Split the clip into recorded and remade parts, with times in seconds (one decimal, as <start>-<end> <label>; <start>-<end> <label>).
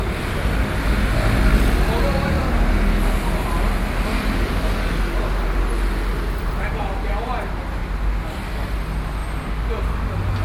0.0-10.4 recorded